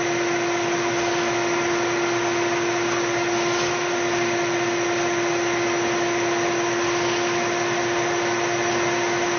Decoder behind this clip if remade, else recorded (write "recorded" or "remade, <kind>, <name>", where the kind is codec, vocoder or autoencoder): recorded